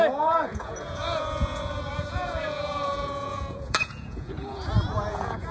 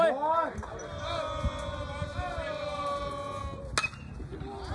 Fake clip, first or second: first